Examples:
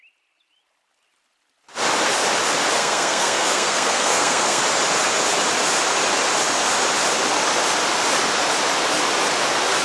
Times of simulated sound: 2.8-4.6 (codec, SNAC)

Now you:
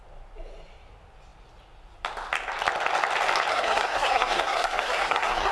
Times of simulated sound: 3.5-5.5 (codec, SNAC)

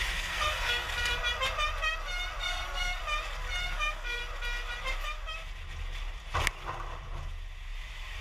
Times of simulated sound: 0.0-1.2 (codec, SNAC); 2.4-3.0; 3.6-4.2

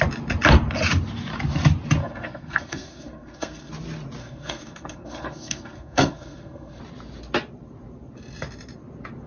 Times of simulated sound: 2.0-3.7 (codec, SNAC); 4.2-6.8

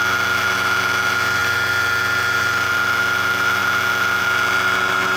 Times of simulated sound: none

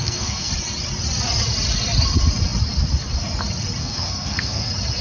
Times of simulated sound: 0.0-0.5 (codec, SNAC); 3.8-4.6